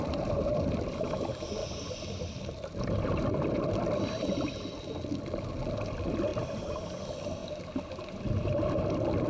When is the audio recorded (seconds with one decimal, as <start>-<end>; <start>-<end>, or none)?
0.0-1.6; 3.7-6.3; 7.0-9.3

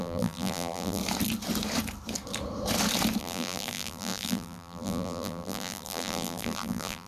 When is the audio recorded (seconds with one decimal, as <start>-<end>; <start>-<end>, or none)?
1.0-3.2

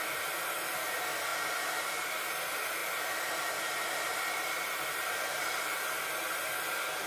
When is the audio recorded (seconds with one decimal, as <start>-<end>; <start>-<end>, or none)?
0.0-7.1

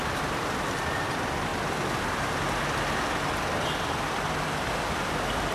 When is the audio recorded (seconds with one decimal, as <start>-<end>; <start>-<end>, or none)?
0.0-5.5

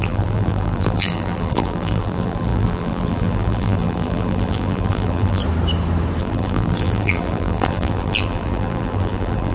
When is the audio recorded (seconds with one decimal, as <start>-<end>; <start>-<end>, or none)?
5.4-6.2

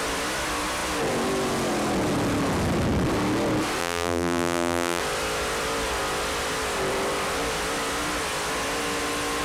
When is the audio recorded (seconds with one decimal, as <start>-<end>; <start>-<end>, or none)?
0.0-3.8; 5.0-9.4

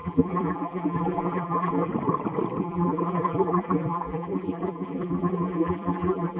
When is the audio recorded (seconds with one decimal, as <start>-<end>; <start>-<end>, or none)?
1.9-2.6

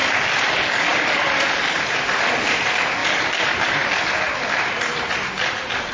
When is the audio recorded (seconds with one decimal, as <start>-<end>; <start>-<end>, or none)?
0.5-0.9; 1.6-3.0